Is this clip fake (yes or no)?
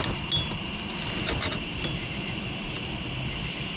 no